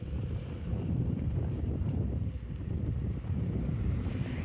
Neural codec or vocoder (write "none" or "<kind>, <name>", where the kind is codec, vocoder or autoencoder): vocoder, BigVGAN v2